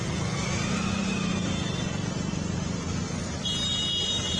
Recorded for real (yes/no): no